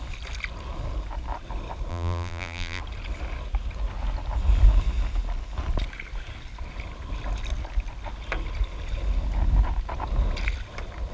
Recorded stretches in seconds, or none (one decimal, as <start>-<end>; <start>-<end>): 0.0-1.9; 2.8-11.1